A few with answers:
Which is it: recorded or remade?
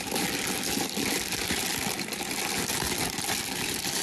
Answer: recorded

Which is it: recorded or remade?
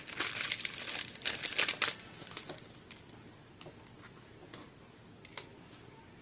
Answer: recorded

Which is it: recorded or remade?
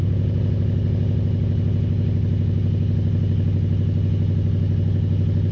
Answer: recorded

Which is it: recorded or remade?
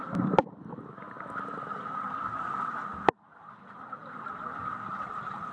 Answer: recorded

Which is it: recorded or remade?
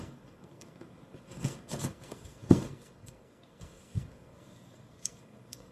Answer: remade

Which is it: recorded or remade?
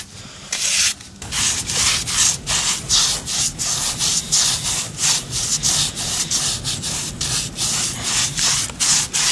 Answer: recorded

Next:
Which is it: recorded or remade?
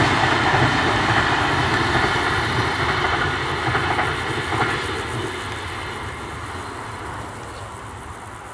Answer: recorded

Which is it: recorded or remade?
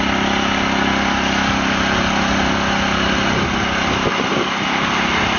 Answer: recorded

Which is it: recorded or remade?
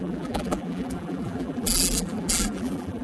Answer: remade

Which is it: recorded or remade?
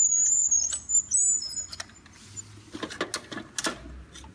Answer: recorded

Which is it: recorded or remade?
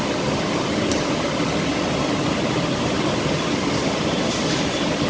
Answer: remade